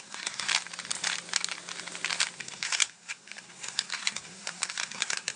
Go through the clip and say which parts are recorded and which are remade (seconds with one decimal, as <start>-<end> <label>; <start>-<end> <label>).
0.0-0.5 remade; 0.5-2.4 recorded; 2.4-5.4 remade